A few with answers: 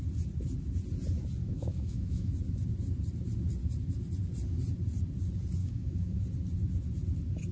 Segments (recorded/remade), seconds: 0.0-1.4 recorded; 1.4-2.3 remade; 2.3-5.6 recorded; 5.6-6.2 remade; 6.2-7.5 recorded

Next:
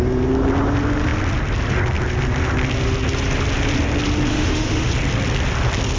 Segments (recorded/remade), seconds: 0.0-4.3 recorded; 4.3-4.9 remade; 4.9-6.0 recorded

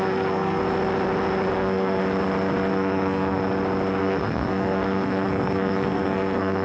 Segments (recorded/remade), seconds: 0.0-0.6 remade; 0.6-1.5 recorded; 1.5-2.0 remade; 2.0-2.7 recorded; 2.7-3.4 remade; 3.4-4.0 recorded; 4.0-6.6 remade

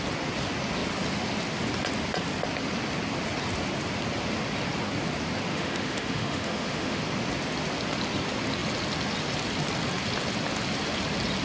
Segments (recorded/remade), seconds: 0.0-5.5 recorded; 5.5-7.0 remade; 7.0-11.4 recorded

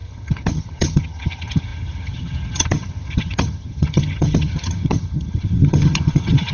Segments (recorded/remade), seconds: 0.0-6.5 remade